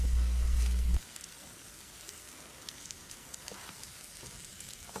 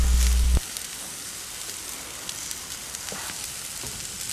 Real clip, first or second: second